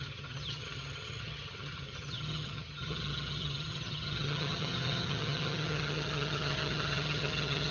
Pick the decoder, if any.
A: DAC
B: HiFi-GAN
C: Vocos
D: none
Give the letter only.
B